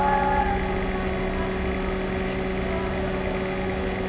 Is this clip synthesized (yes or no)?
no